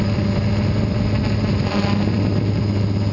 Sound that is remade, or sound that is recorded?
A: recorded